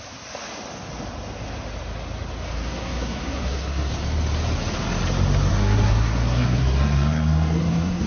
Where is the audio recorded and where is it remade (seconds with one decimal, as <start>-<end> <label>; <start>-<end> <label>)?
0.0-2.5 recorded; 2.5-3.9 remade; 3.9-5.5 recorded; 5.5-8.1 remade